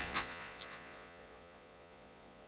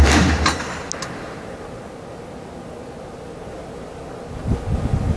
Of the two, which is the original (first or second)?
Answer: second